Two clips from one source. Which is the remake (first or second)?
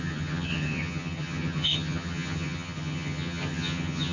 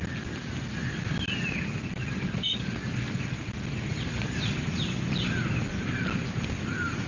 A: first